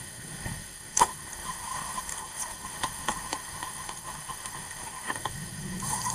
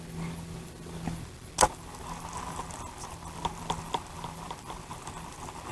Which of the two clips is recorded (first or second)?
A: second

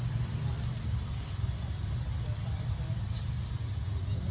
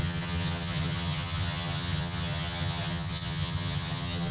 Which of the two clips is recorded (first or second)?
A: first